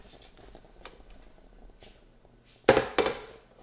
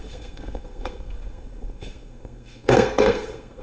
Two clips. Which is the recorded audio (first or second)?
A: first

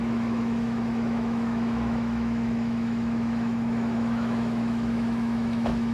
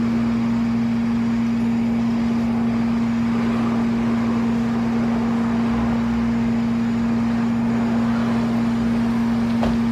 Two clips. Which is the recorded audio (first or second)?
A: second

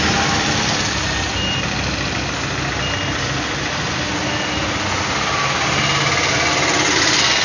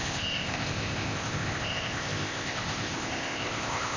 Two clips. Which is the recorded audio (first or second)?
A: first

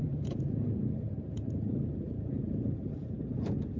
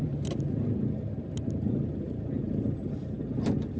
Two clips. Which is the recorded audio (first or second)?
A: second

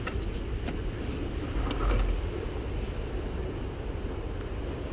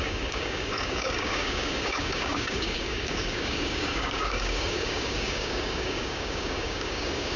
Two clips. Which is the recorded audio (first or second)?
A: first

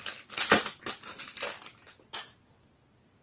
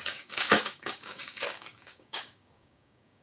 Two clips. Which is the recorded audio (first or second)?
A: first